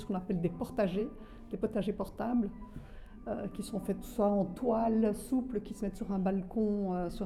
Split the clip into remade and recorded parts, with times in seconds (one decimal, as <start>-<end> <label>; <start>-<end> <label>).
0.0-1.0 remade; 1.0-1.6 recorded; 1.6-4.5 remade; 4.5-5.8 recorded; 5.8-7.3 remade